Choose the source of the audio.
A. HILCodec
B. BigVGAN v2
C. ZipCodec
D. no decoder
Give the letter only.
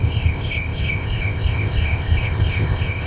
C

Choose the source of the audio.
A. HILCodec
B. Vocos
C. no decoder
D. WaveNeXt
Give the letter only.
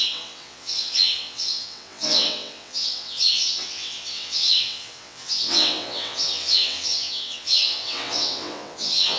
D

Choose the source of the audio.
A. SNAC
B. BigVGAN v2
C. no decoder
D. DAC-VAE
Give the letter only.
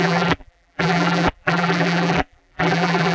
B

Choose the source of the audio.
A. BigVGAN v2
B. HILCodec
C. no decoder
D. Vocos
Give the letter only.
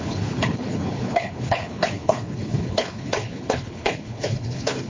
B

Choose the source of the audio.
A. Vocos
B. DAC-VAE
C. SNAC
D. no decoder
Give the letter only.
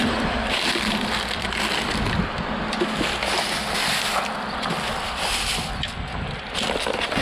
D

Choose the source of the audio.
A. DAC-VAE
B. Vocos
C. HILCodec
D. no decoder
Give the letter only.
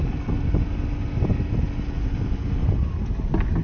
D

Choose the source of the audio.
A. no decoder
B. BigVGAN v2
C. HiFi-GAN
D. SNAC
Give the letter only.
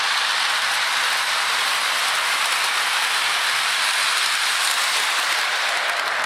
A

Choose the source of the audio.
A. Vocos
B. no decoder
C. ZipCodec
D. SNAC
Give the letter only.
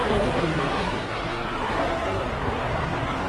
D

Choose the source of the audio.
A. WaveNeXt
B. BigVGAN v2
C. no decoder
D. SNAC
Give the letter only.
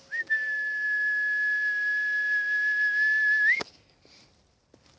C